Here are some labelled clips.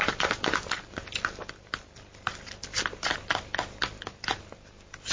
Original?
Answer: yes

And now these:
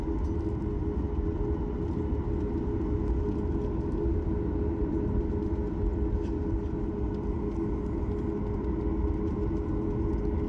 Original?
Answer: yes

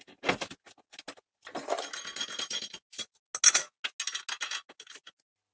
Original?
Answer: yes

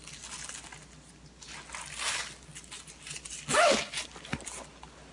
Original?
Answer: yes